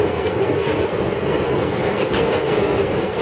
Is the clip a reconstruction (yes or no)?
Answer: yes